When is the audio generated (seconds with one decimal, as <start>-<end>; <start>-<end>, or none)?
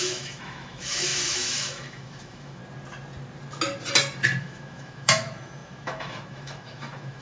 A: 0.0-2.6; 4.4-7.2